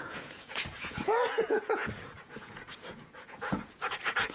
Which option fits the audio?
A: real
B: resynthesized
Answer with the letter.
B